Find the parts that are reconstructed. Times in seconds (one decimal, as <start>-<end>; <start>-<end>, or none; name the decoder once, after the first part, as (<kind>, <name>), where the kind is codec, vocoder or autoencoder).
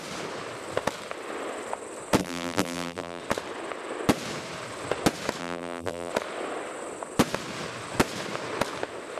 2.2-3.2 (vocoder, BigVGAN v2); 5.4-6.1